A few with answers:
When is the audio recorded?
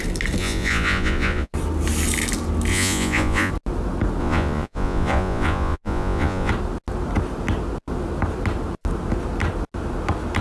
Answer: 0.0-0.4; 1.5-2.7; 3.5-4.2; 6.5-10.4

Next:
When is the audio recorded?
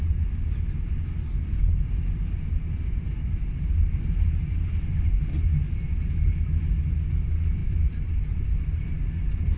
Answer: 0.0-7.6; 8.1-9.6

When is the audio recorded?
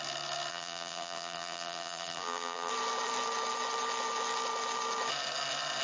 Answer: 0.0-0.5; 2.7-5.8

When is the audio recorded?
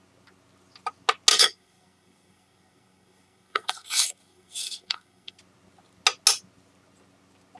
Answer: 0.0-1.3; 5.4-7.6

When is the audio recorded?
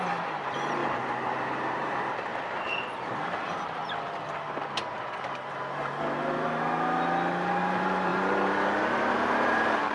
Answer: 0.8-1.5; 2.3-3.0; 3.8-7.6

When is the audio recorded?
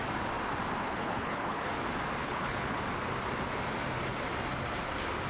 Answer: 0.0-0.8; 1.7-2.2; 2.8-5.3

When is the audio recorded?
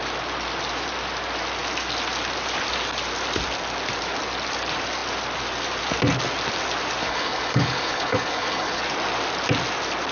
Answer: 0.0-7.0; 8.8-10.1